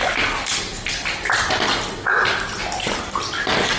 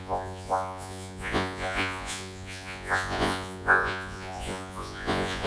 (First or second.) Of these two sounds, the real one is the first